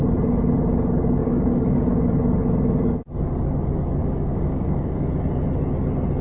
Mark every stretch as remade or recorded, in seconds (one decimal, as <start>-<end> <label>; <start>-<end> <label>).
0.0-1.2 recorded; 1.2-2.0 remade; 2.0-4.0 recorded; 4.0-5.1 remade; 5.1-6.2 recorded